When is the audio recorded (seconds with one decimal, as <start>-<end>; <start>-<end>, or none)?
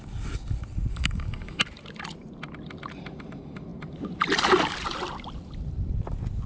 0.0-0.9; 1.6-6.5